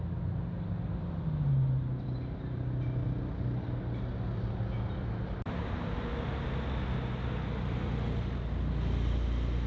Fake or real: real